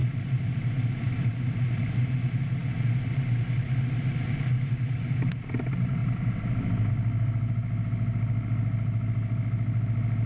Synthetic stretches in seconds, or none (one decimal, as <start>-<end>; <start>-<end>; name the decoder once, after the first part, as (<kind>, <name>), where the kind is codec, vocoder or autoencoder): none